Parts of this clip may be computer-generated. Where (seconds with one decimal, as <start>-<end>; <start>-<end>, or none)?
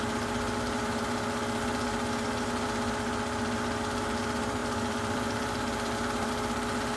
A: 4.6-6.3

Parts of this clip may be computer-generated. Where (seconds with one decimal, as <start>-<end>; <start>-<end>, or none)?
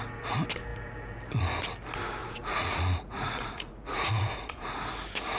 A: 2.2-4.8